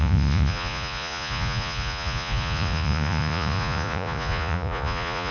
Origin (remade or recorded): remade